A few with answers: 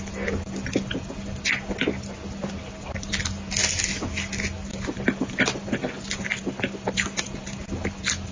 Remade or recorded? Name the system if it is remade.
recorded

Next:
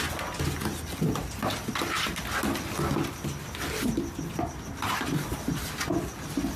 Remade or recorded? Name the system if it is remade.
recorded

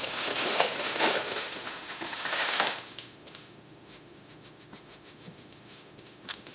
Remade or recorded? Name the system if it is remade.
remade, autoencoder, DAC-VAE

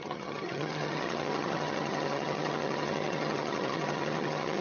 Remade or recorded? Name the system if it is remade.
remade, vocoder, HiFi-GAN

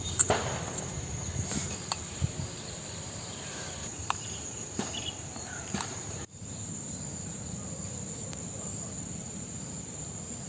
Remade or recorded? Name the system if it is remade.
remade, vocoder, BigVGAN v2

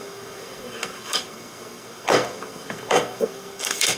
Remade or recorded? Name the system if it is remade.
remade, codec, SNAC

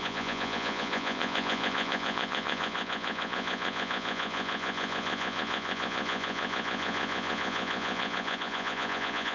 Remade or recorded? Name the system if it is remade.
remade, vocoder, Vocos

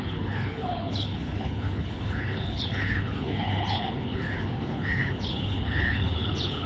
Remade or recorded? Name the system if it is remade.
remade, codec, HILCodec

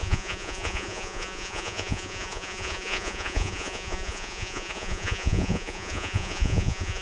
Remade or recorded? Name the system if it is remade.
remade, vocoder, Vocos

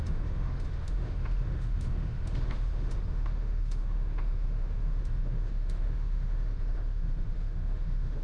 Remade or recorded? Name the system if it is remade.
remade, autoencoder, DAC-VAE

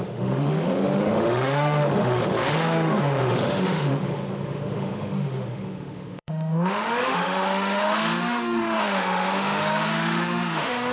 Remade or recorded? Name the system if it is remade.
remade, autoencoder, DAC-VAE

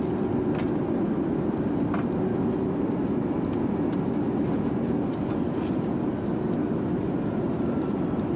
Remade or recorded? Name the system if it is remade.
recorded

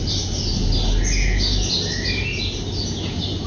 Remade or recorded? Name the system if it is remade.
recorded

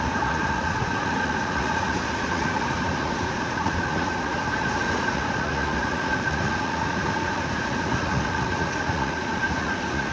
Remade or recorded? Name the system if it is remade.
remade, vocoder, Vocos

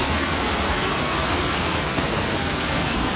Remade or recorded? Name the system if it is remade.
remade, codec, SNAC